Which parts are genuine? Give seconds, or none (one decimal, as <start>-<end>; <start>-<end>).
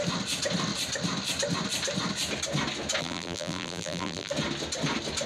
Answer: 0.0-3.0; 4.3-5.3